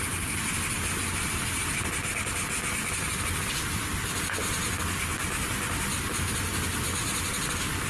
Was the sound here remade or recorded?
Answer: recorded